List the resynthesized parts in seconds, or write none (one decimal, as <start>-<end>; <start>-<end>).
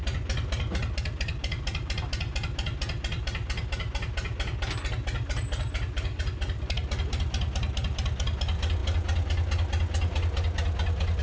none